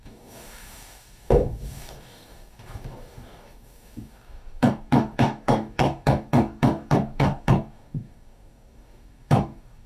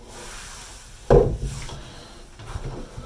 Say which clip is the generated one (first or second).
first